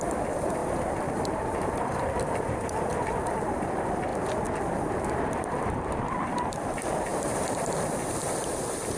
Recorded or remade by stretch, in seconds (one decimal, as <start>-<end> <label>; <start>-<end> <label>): 0.0-4.1 remade; 4.1-5.2 recorded; 5.2-9.0 remade